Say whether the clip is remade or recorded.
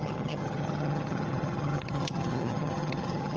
remade